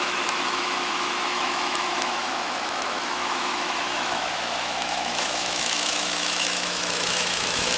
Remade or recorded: remade